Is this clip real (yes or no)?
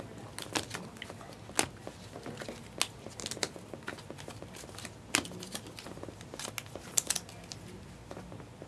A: yes